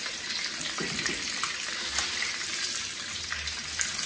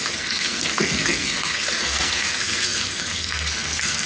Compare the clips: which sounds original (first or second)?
first